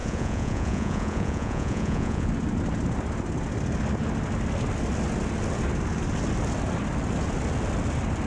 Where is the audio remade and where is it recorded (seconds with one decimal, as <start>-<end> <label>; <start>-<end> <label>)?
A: 0.0-2.3 remade; 2.3-8.3 recorded